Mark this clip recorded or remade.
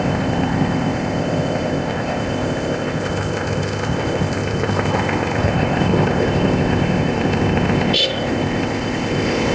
remade